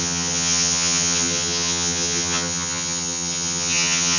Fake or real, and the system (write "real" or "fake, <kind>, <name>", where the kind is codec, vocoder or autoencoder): fake, vocoder, HiFi-GAN